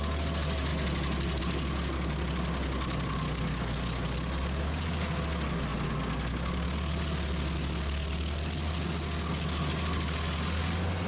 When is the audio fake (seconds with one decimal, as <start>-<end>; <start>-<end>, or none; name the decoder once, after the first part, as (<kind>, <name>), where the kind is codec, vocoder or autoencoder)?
none